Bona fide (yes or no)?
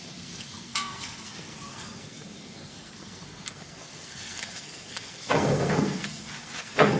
no